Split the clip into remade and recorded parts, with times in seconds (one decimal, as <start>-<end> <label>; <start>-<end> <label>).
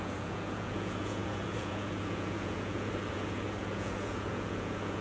0.0-5.0 remade